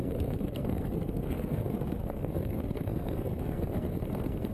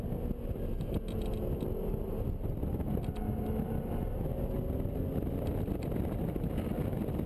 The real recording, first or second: second